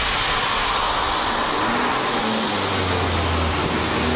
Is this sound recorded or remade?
recorded